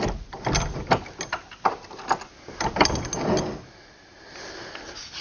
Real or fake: real